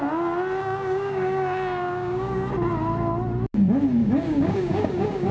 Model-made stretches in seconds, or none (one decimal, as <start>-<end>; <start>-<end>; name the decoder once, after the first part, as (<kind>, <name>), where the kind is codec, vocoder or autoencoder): 0.6-2.5 (codec, DAC); 4.0-5.3